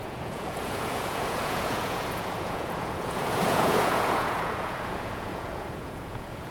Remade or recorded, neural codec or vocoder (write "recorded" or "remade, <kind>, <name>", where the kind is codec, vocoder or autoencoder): remade, vocoder, Vocos